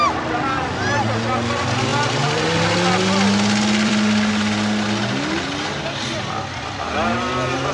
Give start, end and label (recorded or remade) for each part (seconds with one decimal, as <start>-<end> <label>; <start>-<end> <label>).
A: 0.0-7.7 recorded